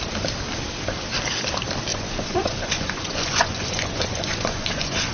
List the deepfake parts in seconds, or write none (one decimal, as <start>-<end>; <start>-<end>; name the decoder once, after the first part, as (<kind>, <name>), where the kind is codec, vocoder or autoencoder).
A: 1.9-5.1 (vocoder, Vocos)